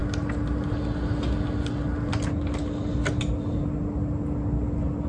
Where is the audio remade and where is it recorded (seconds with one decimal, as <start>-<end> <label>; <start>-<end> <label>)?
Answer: 0.0-5.1 recorded